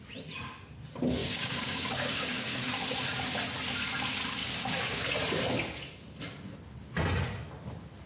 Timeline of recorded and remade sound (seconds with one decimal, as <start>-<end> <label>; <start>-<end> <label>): 0.0-1.2 recorded; 1.2-2.6 remade; 2.6-4.4 recorded; 4.4-5.1 remade; 5.1-8.1 recorded